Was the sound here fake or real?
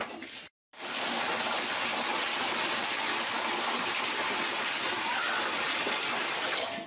real